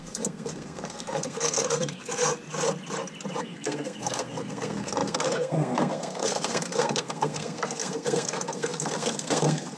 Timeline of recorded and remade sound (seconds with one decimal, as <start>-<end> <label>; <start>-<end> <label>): 0.0-2.3 remade; 2.3-3.4 recorded; 3.4-9.8 remade